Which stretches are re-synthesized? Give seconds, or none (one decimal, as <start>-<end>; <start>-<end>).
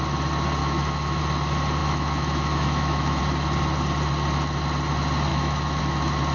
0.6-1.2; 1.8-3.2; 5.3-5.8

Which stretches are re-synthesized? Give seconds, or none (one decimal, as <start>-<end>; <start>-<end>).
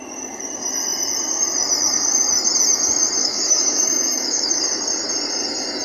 3.2-4.6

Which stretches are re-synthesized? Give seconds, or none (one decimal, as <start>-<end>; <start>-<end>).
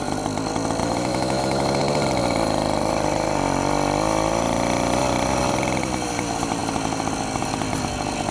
0.8-1.8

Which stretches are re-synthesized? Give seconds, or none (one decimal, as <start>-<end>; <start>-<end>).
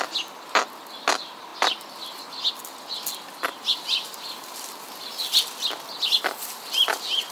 none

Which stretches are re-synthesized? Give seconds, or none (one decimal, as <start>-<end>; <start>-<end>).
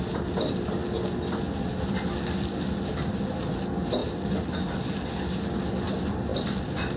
none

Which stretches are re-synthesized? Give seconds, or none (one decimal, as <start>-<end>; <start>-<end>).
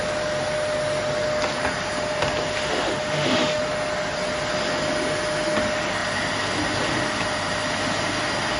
2.6-3.6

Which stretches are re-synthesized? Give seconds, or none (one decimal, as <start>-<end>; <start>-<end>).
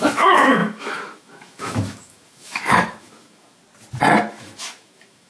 0.0-3.6; 4.3-5.3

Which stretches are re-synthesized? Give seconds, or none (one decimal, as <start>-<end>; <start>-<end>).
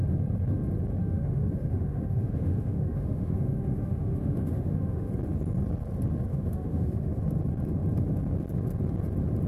1.0-5.1; 6.3-7.2